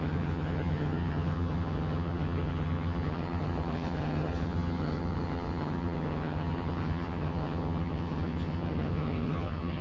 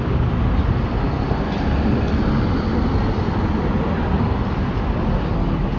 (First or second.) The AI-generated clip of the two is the first